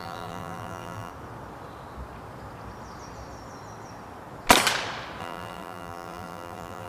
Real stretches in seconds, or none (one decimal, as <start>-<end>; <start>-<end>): 1.1-5.2